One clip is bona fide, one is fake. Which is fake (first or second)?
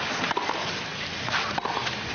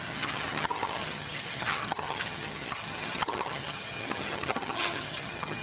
second